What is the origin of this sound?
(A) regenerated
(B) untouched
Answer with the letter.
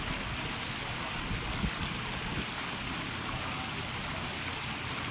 B